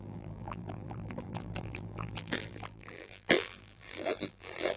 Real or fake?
fake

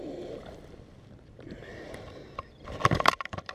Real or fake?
fake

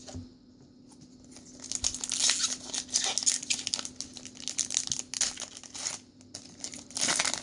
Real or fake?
real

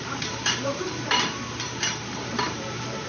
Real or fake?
fake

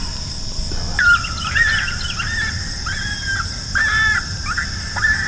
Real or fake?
fake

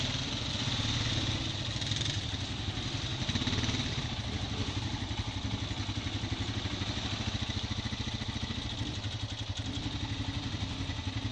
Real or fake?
real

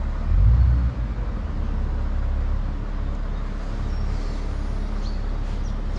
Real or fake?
real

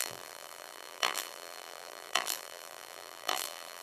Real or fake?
fake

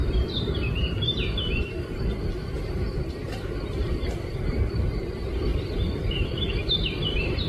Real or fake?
fake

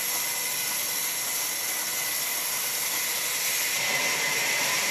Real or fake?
real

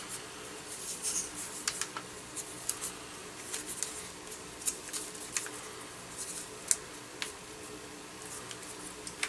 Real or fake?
real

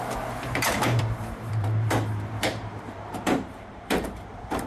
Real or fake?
fake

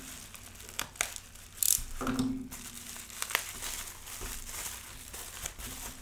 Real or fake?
real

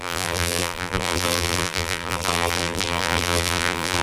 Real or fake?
fake